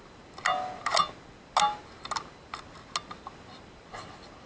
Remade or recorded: recorded